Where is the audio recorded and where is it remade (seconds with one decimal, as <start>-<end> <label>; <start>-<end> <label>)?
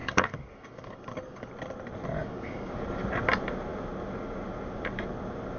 0.0-1.5 remade; 1.5-2.2 recorded; 2.2-2.7 remade; 2.7-5.6 recorded